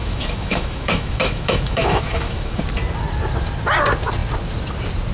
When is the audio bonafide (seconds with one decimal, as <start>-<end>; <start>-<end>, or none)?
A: 2.6-5.1